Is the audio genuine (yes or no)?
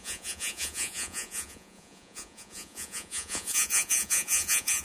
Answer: no